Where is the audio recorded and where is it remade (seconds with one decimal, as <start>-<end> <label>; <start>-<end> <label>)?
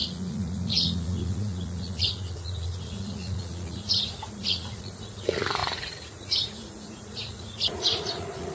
0.0-8.5 remade